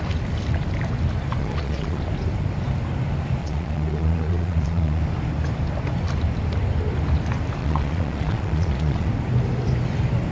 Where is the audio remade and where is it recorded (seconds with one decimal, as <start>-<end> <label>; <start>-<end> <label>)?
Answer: 0.0-1.4 recorded; 1.4-2.0 remade; 2.0-3.4 recorded; 3.4-5.0 remade; 5.0-7.6 recorded; 7.6-9.1 remade; 9.1-10.3 recorded